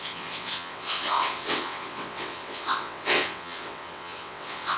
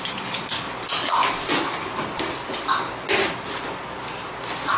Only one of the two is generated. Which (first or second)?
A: first